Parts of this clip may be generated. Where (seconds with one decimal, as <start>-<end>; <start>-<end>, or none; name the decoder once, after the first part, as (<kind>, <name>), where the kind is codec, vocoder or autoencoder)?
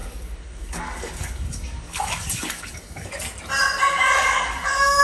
0.0-3.1 (codec, DAC); 3.9-5.0